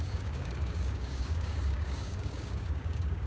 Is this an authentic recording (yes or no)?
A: no